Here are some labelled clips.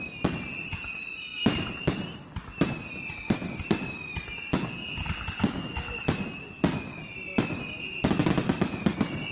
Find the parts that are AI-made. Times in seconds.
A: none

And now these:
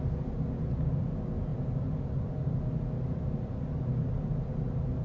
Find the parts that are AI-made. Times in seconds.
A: none

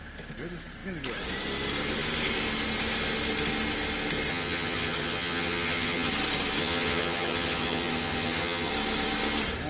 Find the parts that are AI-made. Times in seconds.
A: 4.3-6.1 (vocoder, HiFi-GAN); 6.6-8.7

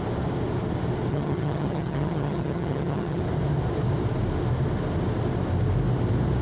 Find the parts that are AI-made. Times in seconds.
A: 1.1-3.2 (vocoder, HiFi-GAN)